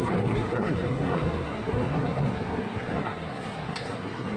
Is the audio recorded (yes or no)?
no